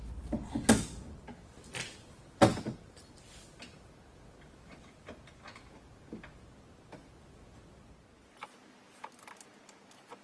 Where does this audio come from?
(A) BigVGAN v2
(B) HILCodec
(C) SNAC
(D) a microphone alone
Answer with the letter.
D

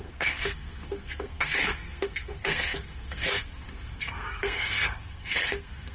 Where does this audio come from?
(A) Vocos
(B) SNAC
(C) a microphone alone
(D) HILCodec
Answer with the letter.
B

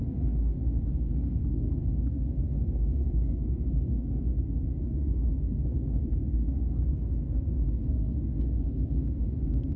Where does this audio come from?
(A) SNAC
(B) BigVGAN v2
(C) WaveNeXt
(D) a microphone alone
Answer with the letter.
A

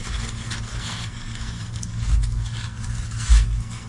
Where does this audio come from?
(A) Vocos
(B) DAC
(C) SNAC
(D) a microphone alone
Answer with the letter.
C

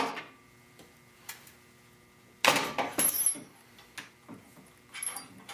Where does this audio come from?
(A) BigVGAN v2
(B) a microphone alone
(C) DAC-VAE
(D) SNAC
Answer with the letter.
B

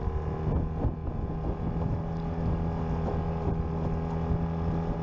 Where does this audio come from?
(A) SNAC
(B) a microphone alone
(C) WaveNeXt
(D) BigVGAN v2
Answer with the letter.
B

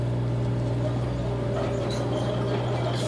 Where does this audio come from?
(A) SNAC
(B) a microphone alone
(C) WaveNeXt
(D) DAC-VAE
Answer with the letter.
B